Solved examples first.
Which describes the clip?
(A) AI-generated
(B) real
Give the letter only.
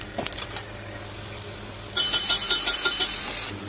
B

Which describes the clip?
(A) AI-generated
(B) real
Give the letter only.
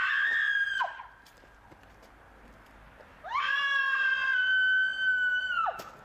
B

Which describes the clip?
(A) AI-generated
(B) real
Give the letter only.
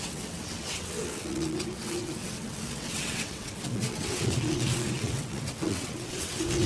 A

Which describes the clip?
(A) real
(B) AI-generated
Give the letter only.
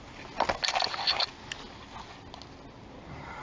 A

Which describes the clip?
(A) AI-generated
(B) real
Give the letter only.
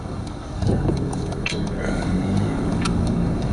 A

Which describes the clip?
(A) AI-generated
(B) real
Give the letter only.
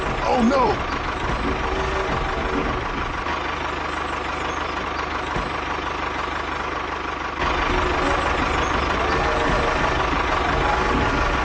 B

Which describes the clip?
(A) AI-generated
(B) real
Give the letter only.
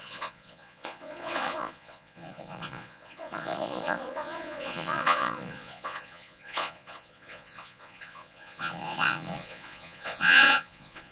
A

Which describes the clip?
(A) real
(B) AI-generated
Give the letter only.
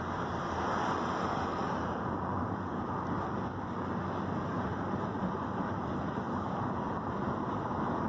B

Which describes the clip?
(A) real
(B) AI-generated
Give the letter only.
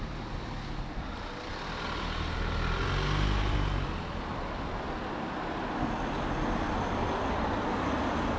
A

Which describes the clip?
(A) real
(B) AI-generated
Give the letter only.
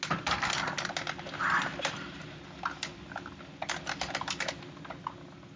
A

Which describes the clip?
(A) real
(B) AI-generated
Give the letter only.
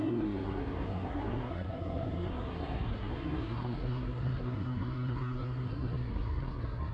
B